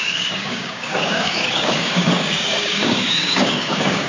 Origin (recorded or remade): remade